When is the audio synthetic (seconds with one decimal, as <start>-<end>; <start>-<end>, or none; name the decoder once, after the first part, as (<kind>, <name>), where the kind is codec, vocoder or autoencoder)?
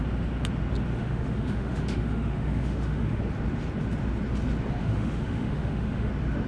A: 1.0-3.2 (autoencoder, DAC-VAE); 4.8-6.1